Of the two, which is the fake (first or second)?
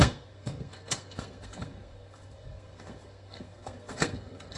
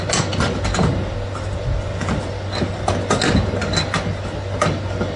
first